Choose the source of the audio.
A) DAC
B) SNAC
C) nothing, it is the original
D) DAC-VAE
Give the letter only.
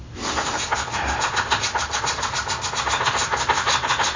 C